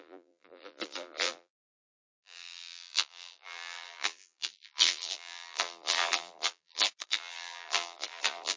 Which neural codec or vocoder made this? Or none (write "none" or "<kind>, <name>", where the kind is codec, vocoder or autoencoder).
vocoder, BigVGAN v2